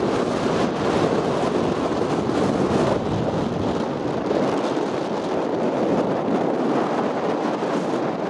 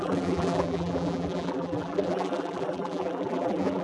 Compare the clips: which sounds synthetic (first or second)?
second